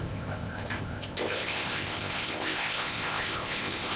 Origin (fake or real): fake